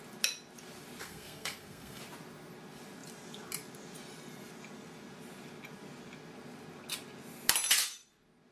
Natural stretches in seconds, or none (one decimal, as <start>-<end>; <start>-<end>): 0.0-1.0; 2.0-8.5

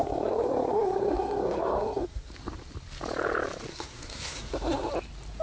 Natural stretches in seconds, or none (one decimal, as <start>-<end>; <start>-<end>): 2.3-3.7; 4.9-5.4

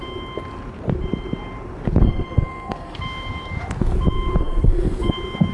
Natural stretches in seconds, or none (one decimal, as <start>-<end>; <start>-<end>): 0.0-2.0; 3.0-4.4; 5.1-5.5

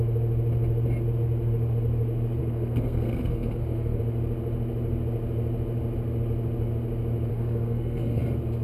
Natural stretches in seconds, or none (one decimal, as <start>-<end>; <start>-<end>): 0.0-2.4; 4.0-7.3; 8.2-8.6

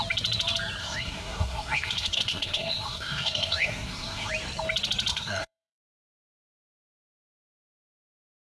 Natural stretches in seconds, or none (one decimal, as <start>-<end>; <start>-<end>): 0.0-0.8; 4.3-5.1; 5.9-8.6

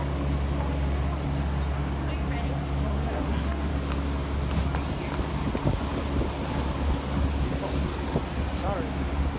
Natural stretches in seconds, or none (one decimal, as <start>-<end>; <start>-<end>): 0.0-3.1; 3.7-9.4